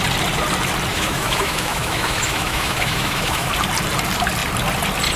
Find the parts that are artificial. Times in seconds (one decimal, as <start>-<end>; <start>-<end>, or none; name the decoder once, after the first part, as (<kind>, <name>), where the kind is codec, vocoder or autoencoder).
0.9-3.5 (autoencoder, DAC-VAE)

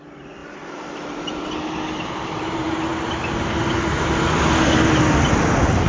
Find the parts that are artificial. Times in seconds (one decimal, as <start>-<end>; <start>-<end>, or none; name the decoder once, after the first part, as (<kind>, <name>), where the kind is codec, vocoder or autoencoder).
0.0-2.9 (vocoder, BigVGAN v2); 4.6-5.9

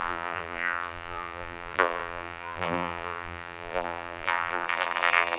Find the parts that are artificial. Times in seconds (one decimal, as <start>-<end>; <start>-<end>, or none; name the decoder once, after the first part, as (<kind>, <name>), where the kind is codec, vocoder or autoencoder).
0.0-5.4 (vocoder, BigVGAN v2)

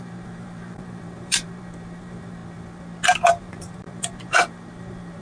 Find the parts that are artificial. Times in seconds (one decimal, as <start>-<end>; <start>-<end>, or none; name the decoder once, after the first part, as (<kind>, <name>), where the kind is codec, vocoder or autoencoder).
0.0-2.4 (vocoder, BigVGAN v2); 3.4-5.2

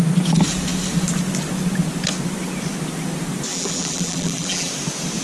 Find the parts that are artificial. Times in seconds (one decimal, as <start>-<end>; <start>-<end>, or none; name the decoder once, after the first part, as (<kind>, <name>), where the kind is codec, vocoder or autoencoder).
3.5-4.7 (vocoder, BigVGAN v2)

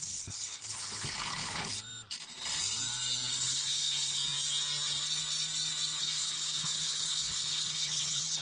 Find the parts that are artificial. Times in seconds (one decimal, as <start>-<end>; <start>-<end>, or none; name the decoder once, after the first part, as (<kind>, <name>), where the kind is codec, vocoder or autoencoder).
0.0-1.7 (codec, HILCodec); 3.4-4.2; 6.0-8.4

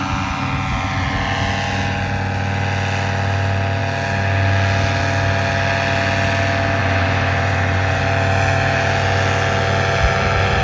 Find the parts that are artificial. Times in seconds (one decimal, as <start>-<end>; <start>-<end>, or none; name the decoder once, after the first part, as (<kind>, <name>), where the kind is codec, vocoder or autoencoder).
6.8-8.0 (vocoder, Vocos)